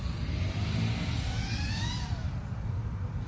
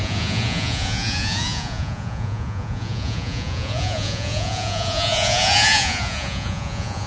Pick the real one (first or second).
first